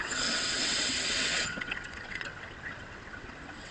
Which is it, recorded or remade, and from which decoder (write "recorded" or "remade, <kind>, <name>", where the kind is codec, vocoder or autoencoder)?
remade, vocoder, WaveNeXt